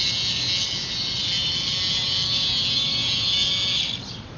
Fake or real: real